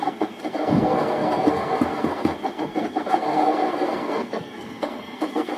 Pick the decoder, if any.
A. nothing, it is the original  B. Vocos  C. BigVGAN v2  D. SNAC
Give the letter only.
D